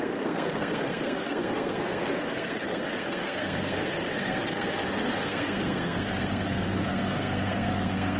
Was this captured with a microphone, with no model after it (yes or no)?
no